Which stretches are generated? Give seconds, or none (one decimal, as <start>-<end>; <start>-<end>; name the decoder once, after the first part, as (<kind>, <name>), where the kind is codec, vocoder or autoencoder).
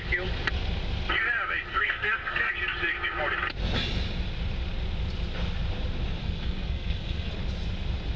1.7-2.5 (codec, SNAC); 6.2-7.3